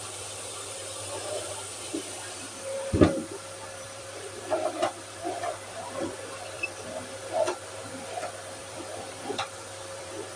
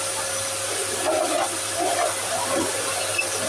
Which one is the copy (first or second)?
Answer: first